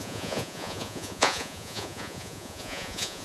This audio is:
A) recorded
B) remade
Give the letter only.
B